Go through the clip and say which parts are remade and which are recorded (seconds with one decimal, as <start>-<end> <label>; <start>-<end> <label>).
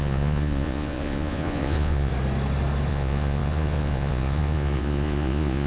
0.0-2.1 remade; 2.1-2.9 recorded; 2.9-5.7 remade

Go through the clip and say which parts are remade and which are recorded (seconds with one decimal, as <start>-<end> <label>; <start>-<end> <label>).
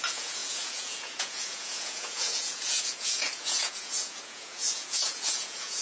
0.0-5.8 remade